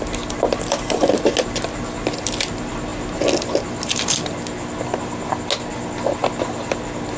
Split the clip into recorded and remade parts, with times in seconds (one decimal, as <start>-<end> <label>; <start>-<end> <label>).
0.0-7.2 recorded